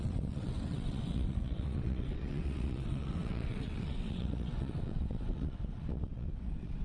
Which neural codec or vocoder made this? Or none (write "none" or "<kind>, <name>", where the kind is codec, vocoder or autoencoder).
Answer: vocoder, WaveNeXt